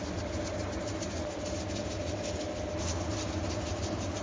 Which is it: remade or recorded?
recorded